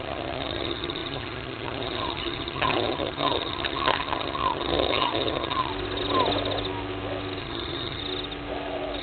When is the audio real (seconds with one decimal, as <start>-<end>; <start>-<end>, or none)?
5.7-7.4; 8.0-9.0